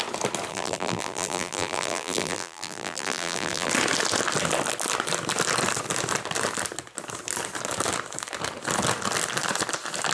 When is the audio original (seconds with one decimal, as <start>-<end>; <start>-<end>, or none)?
0.0-0.5; 3.7-10.1